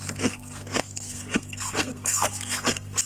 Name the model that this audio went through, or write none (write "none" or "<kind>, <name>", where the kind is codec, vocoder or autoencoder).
codec, SNAC